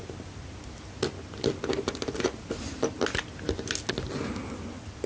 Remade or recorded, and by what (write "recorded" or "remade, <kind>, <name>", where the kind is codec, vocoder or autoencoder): recorded